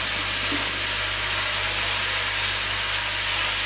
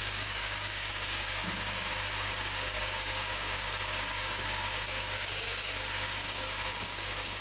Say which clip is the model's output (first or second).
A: second